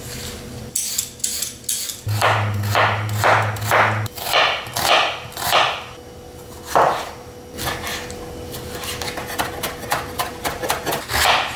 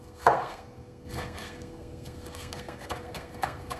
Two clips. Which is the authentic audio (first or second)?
first